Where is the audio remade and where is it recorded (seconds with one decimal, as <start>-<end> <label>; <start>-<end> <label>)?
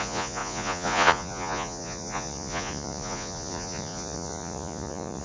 0.0-5.2 remade